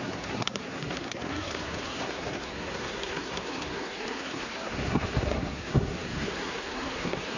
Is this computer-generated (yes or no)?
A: yes